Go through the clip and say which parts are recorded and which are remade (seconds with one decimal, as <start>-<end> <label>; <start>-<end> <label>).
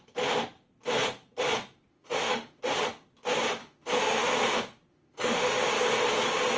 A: 0.0-1.9 recorded; 1.9-2.6 remade; 2.6-3.6 recorded; 3.6-4.3 remade; 4.3-4.9 recorded; 4.9-5.5 remade; 5.5-6.6 recorded